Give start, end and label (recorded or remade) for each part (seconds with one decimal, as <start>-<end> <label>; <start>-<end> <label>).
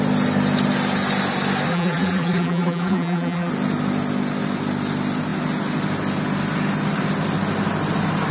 0.0-1.7 recorded; 1.7-3.5 remade; 3.5-8.3 recorded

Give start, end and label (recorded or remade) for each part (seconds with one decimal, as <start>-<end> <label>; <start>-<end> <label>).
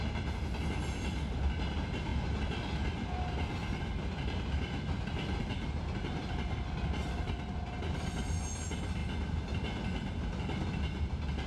0.0-3.6 recorded; 3.6-5.4 remade; 5.4-11.5 recorded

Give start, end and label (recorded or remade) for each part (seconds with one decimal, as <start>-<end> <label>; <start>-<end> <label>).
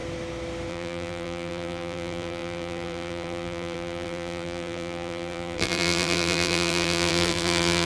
0.0-0.7 recorded; 0.7-7.8 remade